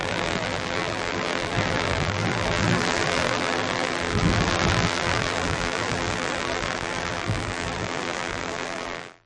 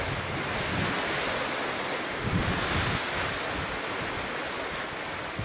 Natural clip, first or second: second